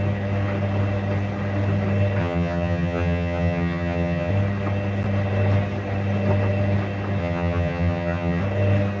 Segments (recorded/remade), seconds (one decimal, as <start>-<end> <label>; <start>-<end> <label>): 0.0-2.2 recorded; 2.2-4.3 remade; 4.3-7.2 recorded; 7.2-8.4 remade; 8.4-9.0 recorded